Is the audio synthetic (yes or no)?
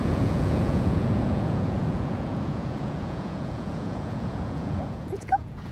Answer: yes